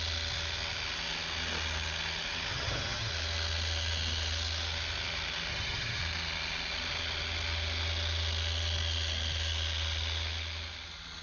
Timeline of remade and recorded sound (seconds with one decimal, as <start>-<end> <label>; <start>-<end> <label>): 0.0-2.5 recorded; 2.5-3.1 remade; 3.1-5.5 recorded; 5.5-6.0 remade; 6.0-11.2 recorded

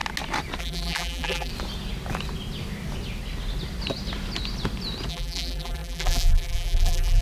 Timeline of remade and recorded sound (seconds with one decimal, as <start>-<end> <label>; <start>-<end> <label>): 0.0-0.6 recorded; 0.6-1.5 remade; 1.5-5.1 recorded; 5.1-7.2 remade

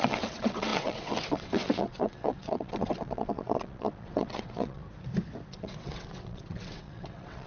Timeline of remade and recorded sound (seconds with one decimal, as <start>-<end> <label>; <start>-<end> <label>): 0.0-4.8 remade; 4.8-5.5 recorded; 5.5-7.5 remade